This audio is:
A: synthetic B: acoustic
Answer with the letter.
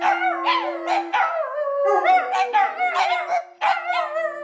B